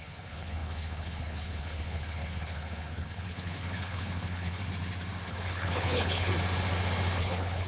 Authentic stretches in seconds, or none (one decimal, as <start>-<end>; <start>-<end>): 4.6-5.3; 6.3-7.2